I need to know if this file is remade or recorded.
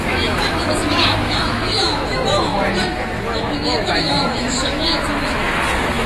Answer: remade